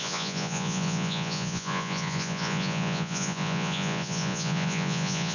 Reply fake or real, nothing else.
fake